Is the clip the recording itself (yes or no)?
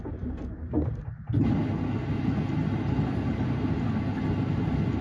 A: yes